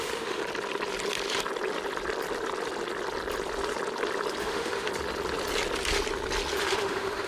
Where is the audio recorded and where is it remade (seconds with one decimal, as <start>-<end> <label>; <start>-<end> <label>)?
0.0-0.4 remade; 0.4-4.4 recorded; 4.4-4.9 remade; 4.9-6.6 recorded; 6.6-7.3 remade